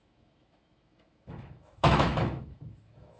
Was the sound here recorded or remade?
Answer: remade